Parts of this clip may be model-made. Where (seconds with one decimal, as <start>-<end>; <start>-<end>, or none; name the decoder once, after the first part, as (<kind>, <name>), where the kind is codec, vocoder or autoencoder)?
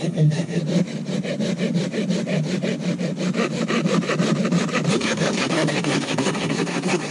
0.0-0.6 (codec, SNAC); 4.9-7.1